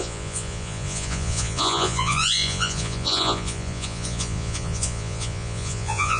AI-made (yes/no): yes